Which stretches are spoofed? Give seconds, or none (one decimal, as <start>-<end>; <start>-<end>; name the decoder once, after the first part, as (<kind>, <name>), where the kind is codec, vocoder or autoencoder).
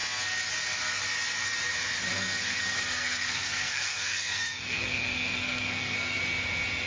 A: 2.1-6.2 (codec, SNAC)